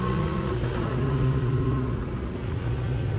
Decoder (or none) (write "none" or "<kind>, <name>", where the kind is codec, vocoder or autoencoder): vocoder, Vocos